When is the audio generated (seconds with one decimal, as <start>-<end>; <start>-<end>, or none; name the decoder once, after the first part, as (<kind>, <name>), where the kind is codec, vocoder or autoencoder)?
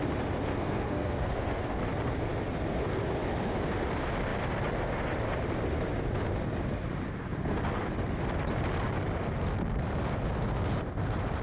0.5-1.8 (codec, SNAC)